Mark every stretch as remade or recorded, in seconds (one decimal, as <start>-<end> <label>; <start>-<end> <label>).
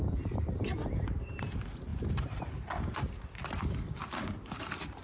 0.0-5.0 remade